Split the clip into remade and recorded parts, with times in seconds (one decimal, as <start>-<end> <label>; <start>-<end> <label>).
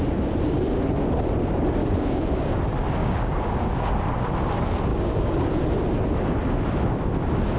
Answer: 0.0-1.8 recorded; 1.8-2.6 remade; 2.6-3.0 recorded; 3.0-3.9 remade; 3.9-4.9 recorded; 4.9-5.5 remade; 5.5-7.6 recorded